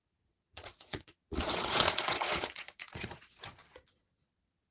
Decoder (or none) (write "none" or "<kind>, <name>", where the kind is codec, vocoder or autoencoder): vocoder, Vocos